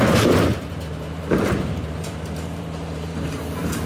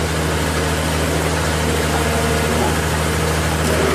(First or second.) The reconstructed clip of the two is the first